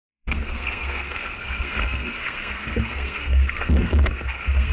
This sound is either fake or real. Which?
fake